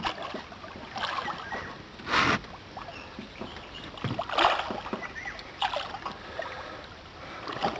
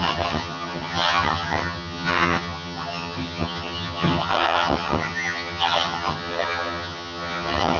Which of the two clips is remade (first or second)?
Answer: second